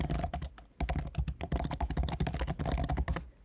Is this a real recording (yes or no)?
yes